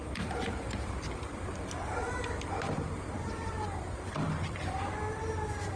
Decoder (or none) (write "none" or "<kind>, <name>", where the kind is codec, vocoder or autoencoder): vocoder, BigVGAN v2